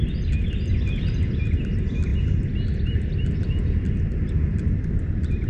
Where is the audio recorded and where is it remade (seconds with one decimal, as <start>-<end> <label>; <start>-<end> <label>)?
0.0-5.5 recorded